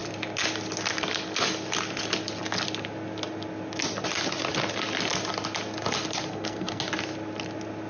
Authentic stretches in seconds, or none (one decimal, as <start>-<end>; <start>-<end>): 0.0-6.3; 6.8-7.9